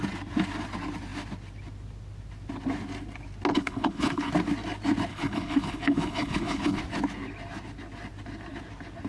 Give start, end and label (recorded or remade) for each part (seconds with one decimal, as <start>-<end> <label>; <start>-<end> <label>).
0.0-3.5 recorded; 3.5-4.3 remade; 4.3-5.1 recorded; 5.1-6.8 remade; 6.8-9.1 recorded